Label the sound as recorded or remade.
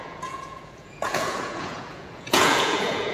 remade